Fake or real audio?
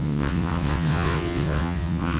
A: fake